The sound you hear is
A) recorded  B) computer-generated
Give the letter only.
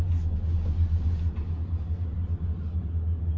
A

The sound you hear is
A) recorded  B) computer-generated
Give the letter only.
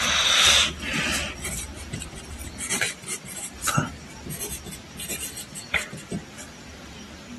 B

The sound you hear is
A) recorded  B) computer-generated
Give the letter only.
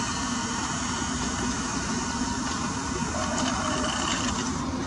B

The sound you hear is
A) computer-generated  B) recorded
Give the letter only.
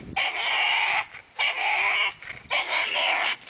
A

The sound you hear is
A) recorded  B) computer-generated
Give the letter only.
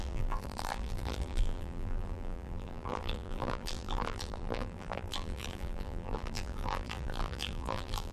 B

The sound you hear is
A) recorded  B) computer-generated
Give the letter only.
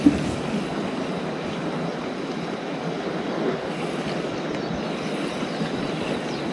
A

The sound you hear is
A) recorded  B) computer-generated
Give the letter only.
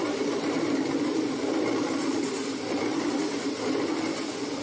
A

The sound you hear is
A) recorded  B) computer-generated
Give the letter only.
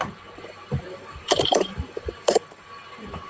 B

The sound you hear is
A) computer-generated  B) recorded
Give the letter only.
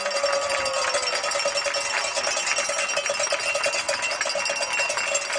B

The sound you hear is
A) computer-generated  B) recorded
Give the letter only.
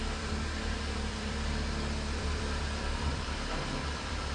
A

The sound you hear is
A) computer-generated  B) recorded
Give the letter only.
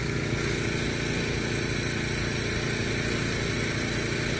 B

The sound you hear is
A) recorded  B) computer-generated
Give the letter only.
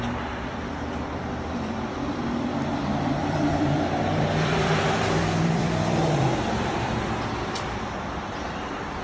B